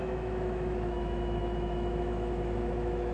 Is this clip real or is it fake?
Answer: fake